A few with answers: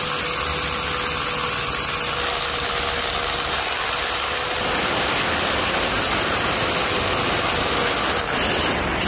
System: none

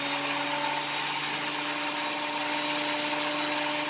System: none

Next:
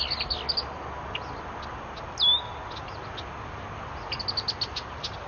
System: none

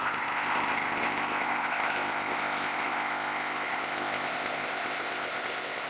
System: codec, ZipCodec